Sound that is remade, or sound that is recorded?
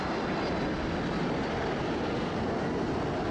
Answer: recorded